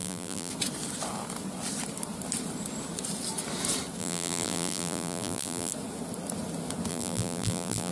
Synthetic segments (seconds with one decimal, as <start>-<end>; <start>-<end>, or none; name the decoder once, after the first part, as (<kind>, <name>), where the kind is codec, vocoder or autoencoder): 0.0-0.5 (vocoder, BigVGAN v2); 4.0-5.7; 6.9-7.9